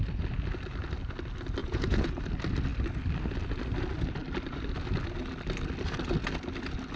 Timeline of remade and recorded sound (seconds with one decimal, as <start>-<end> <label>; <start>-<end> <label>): 0.0-1.6 recorded; 1.6-2.2 remade; 2.2-7.0 recorded